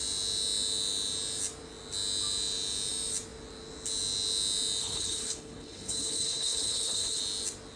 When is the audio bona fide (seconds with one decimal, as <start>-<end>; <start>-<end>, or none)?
0.0-4.8; 7.2-7.8